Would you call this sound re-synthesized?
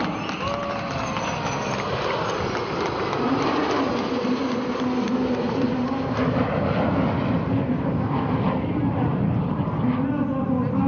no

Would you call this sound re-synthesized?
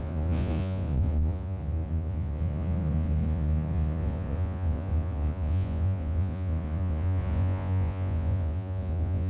yes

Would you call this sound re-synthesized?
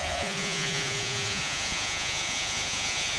yes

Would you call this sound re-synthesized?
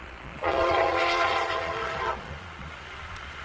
yes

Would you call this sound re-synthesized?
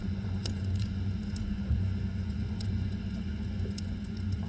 yes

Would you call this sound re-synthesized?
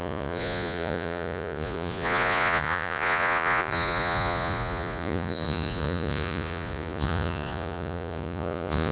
yes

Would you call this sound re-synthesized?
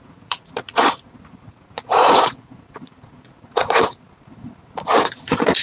yes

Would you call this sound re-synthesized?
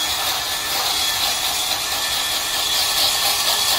no